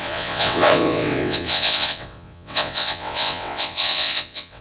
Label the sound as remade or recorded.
remade